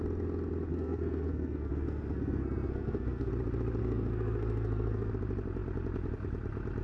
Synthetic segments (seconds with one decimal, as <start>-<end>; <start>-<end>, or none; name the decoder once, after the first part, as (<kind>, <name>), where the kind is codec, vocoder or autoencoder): 0.7-3.3 (codec, SNAC); 3.8-5.1